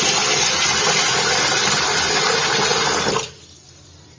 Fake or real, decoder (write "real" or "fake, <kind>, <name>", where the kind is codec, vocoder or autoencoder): real